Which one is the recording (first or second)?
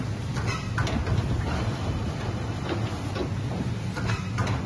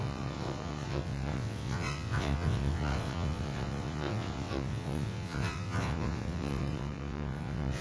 first